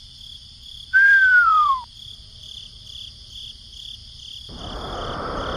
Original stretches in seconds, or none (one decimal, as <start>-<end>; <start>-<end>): 0.0-0.4; 3.3-4.0; 4.6-5.0